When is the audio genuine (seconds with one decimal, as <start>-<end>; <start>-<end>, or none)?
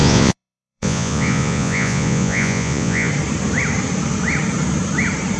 3.1-5.4